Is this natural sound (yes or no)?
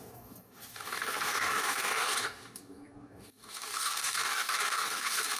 no